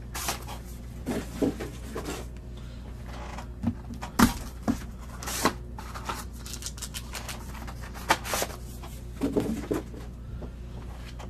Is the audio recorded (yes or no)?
yes